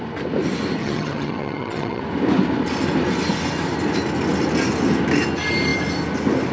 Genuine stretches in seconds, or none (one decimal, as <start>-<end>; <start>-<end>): 0.0-0.8; 2.0-6.5